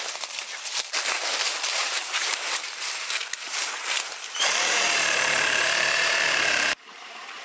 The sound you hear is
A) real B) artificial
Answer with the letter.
B